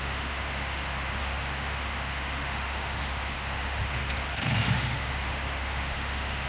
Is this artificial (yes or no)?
yes